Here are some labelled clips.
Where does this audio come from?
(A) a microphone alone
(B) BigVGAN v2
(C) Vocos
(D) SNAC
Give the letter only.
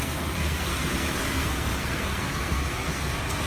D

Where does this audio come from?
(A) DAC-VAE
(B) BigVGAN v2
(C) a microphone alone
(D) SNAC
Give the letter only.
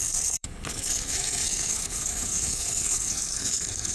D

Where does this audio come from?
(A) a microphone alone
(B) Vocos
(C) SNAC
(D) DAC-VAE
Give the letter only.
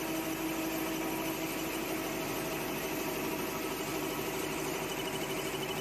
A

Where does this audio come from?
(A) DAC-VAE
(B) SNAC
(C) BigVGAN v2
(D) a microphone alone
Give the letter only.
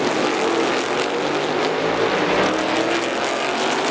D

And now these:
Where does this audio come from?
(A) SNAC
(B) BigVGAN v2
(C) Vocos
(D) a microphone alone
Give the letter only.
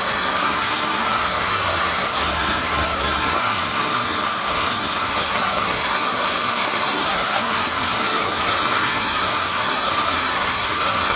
A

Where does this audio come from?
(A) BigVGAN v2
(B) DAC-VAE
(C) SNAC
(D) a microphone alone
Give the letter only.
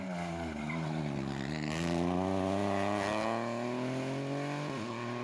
D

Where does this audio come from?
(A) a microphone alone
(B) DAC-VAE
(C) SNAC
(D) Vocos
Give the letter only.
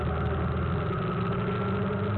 A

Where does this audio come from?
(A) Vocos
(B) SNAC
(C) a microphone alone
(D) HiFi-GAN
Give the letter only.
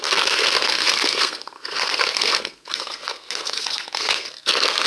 B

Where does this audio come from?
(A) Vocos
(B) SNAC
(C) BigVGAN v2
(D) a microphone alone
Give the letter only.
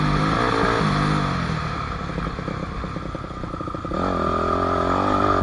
D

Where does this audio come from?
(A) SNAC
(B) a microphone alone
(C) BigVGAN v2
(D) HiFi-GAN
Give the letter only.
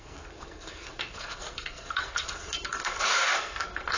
A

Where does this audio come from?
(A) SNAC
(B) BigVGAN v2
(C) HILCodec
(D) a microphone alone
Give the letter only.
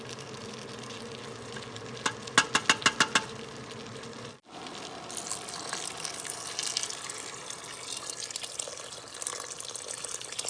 D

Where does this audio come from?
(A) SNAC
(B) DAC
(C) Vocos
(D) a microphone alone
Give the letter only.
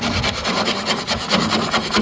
D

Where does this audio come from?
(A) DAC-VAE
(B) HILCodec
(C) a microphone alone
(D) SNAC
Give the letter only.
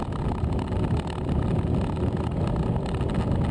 C